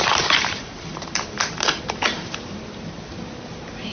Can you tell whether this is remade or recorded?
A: remade